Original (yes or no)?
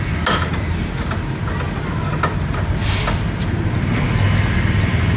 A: yes